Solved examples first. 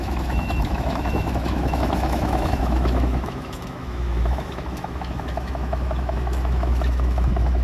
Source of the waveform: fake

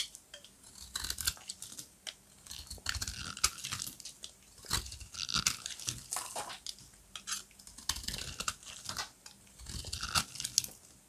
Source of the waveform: real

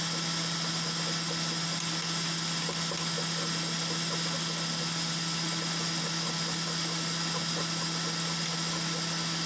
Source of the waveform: real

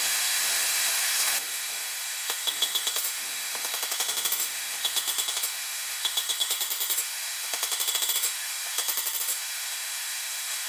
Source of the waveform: fake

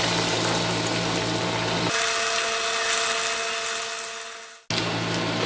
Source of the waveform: real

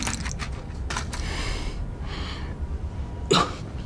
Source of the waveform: real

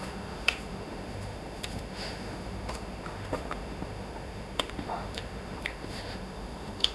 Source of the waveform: fake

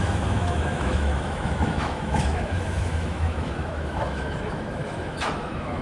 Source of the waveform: fake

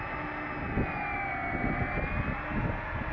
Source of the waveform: real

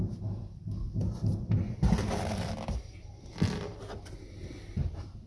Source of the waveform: real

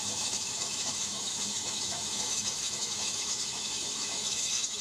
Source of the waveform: fake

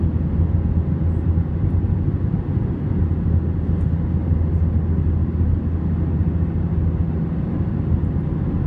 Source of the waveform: real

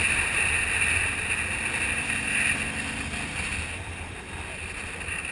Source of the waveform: real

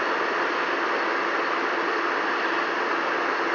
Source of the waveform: real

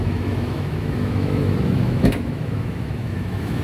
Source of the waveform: fake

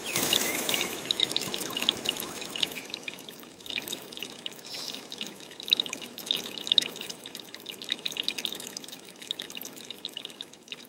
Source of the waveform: fake